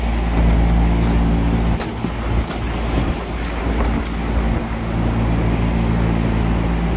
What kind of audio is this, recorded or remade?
recorded